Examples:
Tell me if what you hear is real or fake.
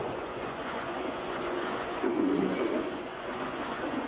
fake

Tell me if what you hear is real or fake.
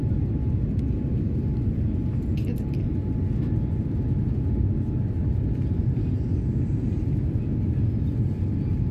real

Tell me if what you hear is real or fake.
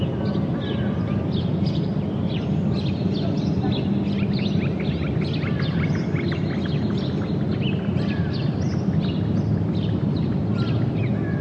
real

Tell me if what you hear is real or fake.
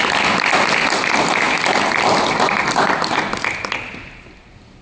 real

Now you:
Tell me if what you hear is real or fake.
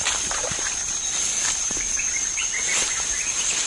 real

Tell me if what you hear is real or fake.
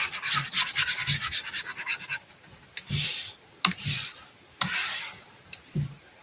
fake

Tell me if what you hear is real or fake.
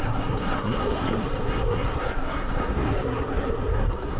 fake